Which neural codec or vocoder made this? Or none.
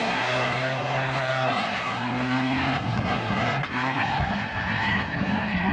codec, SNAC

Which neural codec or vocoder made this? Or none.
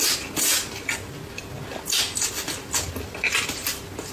none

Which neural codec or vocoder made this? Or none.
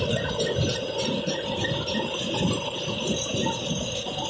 none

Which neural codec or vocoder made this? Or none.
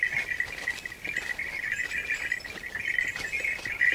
none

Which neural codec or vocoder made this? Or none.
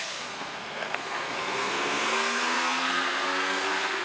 codec, SNAC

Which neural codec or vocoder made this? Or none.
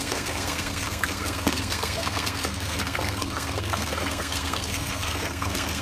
codec, SNAC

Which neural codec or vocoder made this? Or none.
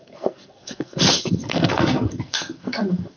codec, SNAC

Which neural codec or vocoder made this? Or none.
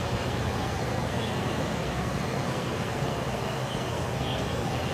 codec, SNAC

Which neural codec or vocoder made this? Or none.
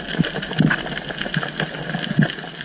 none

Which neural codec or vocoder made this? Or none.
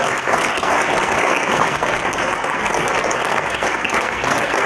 codec, SNAC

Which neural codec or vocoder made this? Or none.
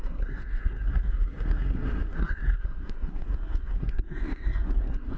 codec, SNAC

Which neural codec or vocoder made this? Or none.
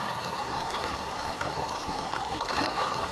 codec, SNAC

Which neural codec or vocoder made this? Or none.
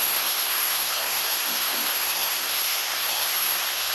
codec, SNAC